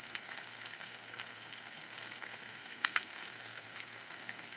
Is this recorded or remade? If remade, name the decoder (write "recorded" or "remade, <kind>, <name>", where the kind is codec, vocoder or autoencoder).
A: remade, codec, SNAC